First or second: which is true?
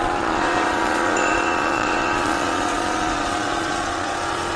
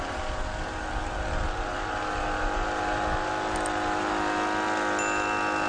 second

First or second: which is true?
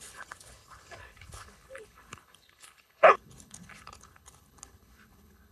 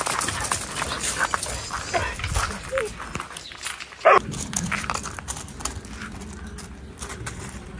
second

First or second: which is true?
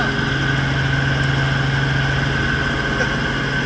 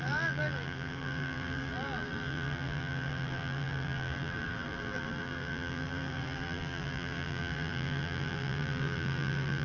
first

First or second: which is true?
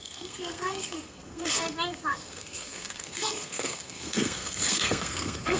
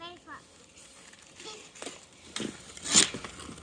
second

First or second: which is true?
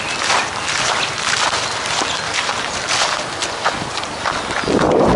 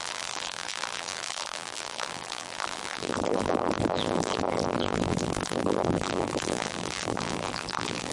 first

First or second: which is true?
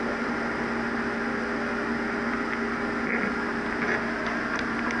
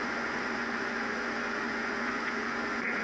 first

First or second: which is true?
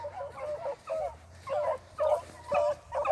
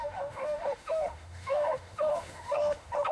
first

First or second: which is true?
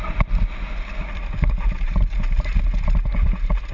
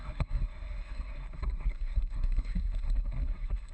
first